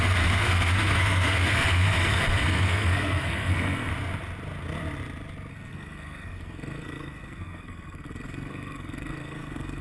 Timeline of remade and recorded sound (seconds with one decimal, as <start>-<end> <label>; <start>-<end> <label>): 0.0-3.9 remade; 3.9-5.5 recorded; 5.5-9.8 remade